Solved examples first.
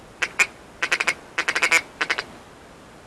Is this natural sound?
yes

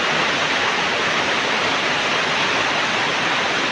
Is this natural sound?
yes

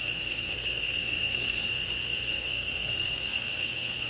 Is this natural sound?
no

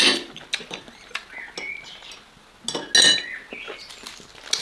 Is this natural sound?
yes